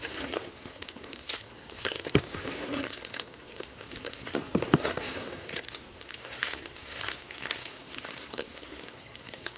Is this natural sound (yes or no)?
no